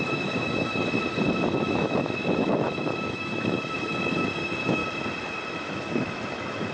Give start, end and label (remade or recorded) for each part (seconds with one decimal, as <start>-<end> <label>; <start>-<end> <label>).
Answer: 0.0-0.8 remade; 0.8-1.6 recorded; 1.6-4.8 remade; 4.8-5.5 recorded; 5.5-6.7 remade